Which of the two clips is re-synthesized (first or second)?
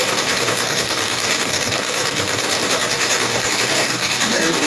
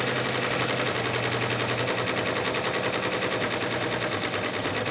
first